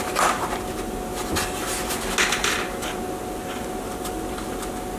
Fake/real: real